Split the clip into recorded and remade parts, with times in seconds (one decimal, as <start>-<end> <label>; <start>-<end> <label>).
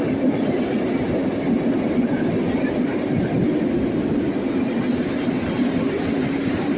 0.0-6.8 recorded